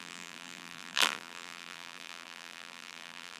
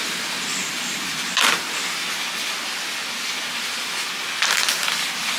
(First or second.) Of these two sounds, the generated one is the first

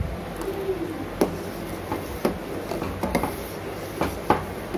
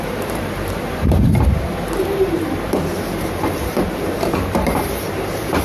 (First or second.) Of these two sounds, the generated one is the second